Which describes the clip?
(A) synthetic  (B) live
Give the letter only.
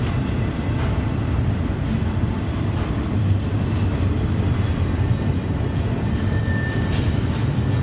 A